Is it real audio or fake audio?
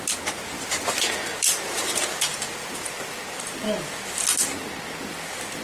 real